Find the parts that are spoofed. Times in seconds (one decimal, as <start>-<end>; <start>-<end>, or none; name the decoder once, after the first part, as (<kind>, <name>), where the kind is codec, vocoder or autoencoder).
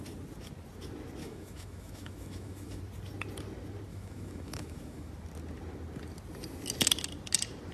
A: 1.2-2.8 (autoencoder, DAC-VAE); 3.9-5.1